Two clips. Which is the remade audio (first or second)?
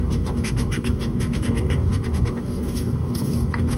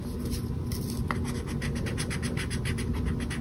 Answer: first